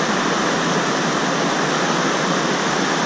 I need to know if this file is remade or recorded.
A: recorded